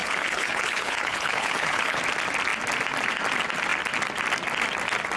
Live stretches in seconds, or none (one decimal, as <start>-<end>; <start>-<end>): 2.0-5.2